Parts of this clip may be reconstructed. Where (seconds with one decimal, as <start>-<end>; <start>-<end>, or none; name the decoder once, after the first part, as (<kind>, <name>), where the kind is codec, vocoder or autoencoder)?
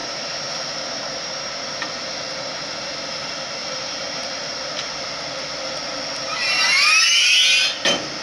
3.6-4.5 (vocoder, BigVGAN v2)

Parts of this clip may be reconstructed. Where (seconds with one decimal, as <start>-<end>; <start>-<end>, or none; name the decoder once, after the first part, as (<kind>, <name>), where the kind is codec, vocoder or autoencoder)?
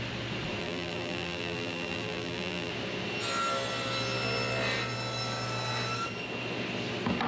0.6-2.7 (vocoder, BigVGAN v2)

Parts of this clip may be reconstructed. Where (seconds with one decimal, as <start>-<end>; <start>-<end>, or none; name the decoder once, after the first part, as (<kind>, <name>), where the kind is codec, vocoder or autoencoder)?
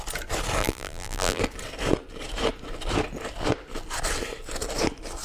0.6-1.4 (vocoder, BigVGAN v2)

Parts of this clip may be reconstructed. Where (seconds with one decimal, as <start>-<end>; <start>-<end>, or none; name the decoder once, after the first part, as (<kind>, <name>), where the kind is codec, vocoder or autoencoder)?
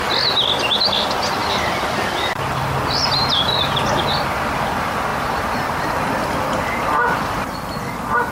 3.2-3.8 (vocoder, BigVGAN v2); 5.1-5.9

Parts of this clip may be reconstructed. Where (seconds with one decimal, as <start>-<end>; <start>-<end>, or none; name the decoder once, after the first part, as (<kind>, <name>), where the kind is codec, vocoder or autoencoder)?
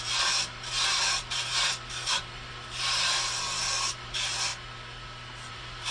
0.0-4.5 (vocoder, BigVGAN v2); 5.5-5.9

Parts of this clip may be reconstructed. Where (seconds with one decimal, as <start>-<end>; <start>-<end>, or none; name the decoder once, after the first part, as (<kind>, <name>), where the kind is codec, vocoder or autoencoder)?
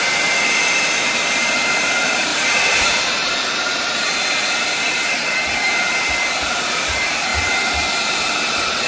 0.0-8.9 (vocoder, BigVGAN v2)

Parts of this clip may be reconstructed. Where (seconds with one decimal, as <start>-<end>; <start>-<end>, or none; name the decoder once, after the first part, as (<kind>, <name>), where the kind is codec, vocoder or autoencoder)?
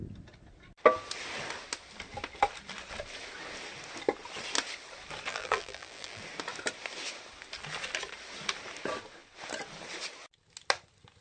5.3-6.2 (vocoder, BigVGAN v2)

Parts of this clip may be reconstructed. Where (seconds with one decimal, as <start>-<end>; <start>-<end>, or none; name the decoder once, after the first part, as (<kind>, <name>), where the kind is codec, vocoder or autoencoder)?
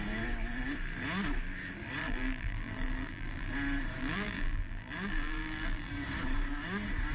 2.0-3.5 (vocoder, BigVGAN v2); 4.0-5.9